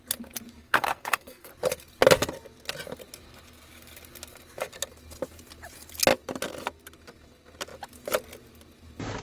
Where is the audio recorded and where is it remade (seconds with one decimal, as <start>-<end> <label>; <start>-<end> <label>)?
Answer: 0.0-0.6 recorded; 0.6-1.5 remade; 1.5-9.2 recorded